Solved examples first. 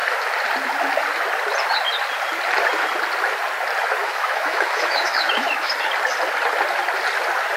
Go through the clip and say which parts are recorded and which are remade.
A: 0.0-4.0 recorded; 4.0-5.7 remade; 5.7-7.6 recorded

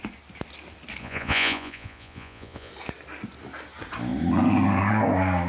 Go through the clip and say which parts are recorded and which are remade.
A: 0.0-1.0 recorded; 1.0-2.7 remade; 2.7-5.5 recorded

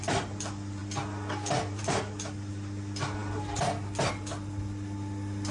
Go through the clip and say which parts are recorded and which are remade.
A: 0.0-5.5 recorded

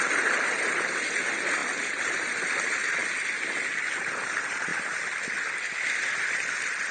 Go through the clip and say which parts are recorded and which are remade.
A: 0.0-3.0 remade; 3.0-4.0 recorded; 4.0-4.7 remade; 4.7-6.0 recorded; 6.0-6.9 remade

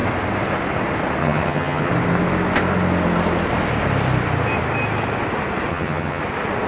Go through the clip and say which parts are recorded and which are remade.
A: 0.0-1.2 recorded; 1.2-1.9 remade; 1.9-5.7 recorded; 5.7-6.2 remade; 6.2-6.7 recorded